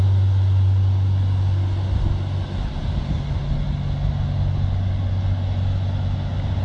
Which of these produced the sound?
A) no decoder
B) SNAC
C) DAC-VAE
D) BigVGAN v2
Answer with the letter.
A